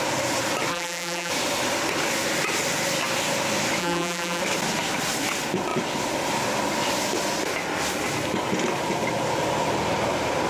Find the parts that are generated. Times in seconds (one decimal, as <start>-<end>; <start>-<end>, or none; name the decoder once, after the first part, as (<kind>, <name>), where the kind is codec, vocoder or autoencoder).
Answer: 0.7-1.3 (vocoder, BigVGAN v2); 3.8-4.4